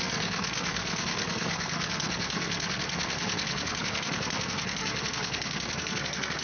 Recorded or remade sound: remade